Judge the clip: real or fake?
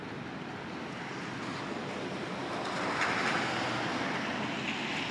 real